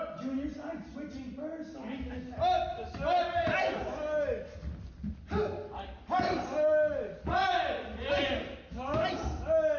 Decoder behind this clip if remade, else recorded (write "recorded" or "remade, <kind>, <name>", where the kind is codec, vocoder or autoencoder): recorded